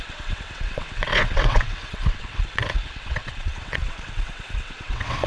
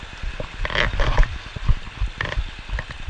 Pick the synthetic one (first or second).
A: first